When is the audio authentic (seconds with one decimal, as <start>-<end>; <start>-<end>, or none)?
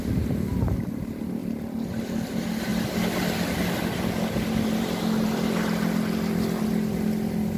0.0-7.6